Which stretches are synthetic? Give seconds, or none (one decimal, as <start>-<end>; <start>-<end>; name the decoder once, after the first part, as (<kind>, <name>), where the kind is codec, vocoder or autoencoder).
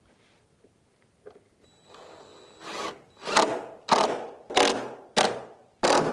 none